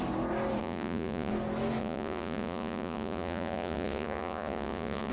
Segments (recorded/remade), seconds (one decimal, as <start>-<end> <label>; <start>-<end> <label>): 0.0-0.6 recorded; 0.6-1.3 remade; 1.3-1.8 recorded; 1.8-5.1 remade